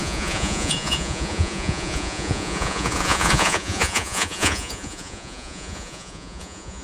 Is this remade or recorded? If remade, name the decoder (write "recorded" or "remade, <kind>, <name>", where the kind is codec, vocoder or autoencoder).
remade, vocoder, Vocos